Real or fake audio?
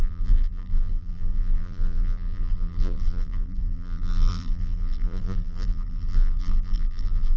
fake